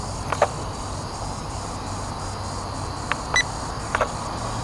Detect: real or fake real